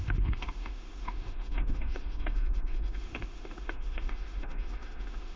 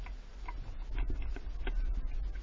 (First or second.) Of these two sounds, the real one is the second